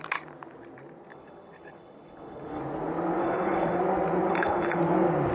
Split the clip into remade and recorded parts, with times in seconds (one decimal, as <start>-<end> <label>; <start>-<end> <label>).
0.0-1.1 recorded; 1.1-2.6 remade; 2.6-3.2 recorded; 3.2-3.8 remade; 3.8-4.3 recorded; 4.3-4.8 remade; 4.8-5.3 recorded